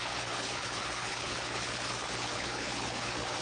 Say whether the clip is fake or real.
fake